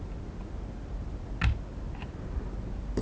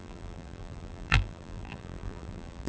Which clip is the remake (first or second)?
second